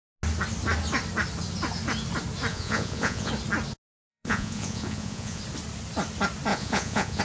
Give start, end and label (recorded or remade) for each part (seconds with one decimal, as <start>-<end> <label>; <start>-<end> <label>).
0.0-2.5 recorded; 2.5-3.3 remade; 3.3-4.1 recorded; 4.1-5.4 remade; 5.4-6.5 recorded; 6.5-7.2 remade